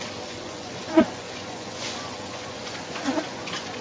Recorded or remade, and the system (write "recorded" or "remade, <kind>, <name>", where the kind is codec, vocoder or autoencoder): remade, vocoder, Vocos